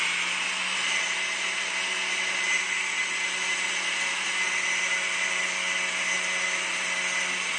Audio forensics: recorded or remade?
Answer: recorded